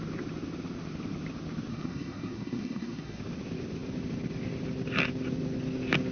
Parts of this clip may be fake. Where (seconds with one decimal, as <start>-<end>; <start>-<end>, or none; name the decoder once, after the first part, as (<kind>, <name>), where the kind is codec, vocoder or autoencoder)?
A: 1.7-3.2 (codec, SNAC)